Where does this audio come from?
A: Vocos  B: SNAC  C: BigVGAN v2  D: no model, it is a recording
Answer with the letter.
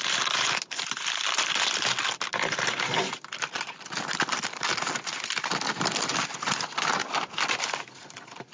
D